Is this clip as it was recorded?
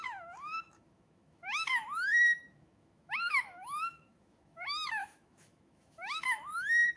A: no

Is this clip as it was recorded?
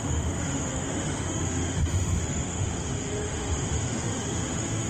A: no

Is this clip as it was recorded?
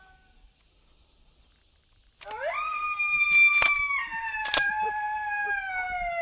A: yes